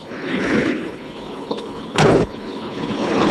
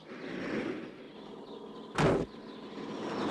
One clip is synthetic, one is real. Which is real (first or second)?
second